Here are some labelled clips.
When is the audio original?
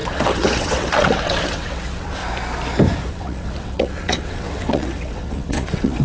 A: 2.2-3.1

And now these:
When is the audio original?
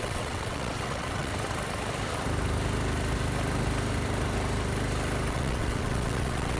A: 1.3-5.3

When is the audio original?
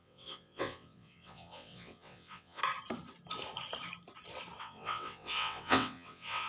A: 2.6-4.6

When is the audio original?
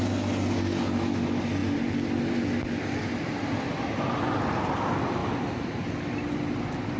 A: 0.0-7.0